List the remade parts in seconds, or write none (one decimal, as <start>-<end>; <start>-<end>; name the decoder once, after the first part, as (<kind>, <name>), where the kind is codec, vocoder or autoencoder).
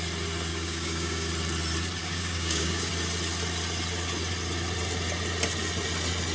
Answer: 0.5-1.3 (codec, DAC); 2.0-2.9